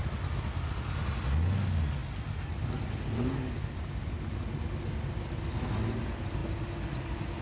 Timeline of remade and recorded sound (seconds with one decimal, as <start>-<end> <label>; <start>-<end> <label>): 0.0-7.4 recorded

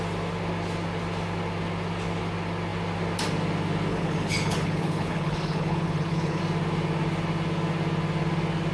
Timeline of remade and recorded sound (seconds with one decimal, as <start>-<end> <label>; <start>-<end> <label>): 0.0-3.9 recorded; 3.9-6.4 remade; 6.4-8.7 recorded

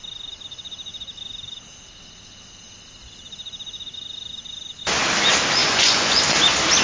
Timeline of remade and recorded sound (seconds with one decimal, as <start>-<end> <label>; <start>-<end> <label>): 0.0-5.6 recorded; 5.6-6.2 remade; 6.2-6.8 recorded

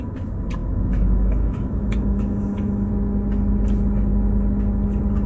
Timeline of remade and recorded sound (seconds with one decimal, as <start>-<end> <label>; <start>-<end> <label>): 0.0-0.6 recorded; 0.6-2.9 remade; 2.9-5.3 recorded

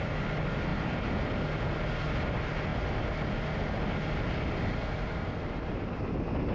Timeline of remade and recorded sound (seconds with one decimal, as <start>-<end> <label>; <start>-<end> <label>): 0.0-0.7 recorded; 0.7-1.3 remade; 1.3-6.5 recorded

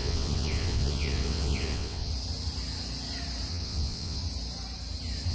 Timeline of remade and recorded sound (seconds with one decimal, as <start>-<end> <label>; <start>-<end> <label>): 0.0-2.1 remade; 2.1-3.5 recorded; 3.5-4.2 remade; 4.2-5.3 recorded

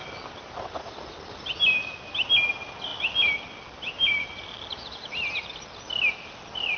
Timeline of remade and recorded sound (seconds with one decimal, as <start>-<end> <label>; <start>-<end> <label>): 0.0-6.8 recorded

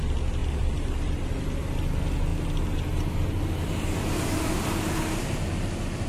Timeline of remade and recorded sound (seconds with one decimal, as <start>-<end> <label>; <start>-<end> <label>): 0.0-2.3 remade; 2.3-6.1 recorded